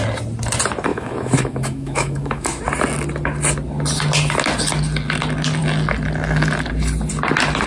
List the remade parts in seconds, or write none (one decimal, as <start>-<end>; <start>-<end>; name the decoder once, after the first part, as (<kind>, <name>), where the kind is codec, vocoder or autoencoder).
0.9-2.6 (autoencoder, DAC-VAE)